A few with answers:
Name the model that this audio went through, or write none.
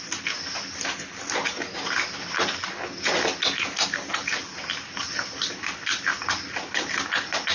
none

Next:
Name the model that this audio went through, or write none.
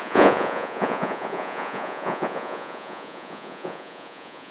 vocoder, Vocos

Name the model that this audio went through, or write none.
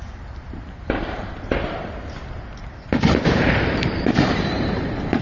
vocoder, BigVGAN v2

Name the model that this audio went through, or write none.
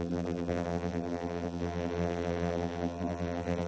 vocoder, BigVGAN v2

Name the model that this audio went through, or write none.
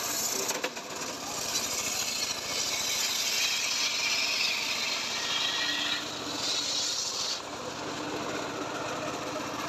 none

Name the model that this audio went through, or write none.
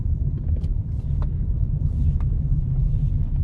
vocoder, BigVGAN v2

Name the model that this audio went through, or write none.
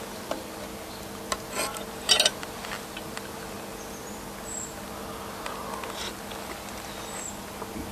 none